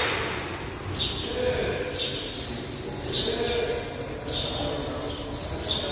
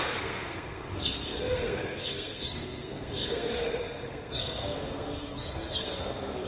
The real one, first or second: first